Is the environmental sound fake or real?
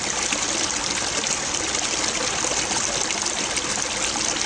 real